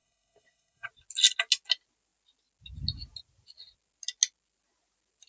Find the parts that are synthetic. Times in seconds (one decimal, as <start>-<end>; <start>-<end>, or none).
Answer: 0.0-0.9